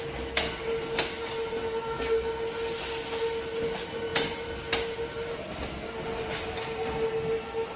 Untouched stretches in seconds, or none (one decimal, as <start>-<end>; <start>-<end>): 0.0-7.8